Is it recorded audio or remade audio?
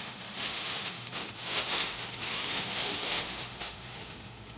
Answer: remade